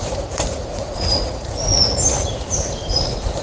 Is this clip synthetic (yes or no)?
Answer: yes